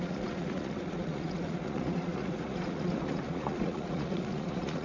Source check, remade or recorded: remade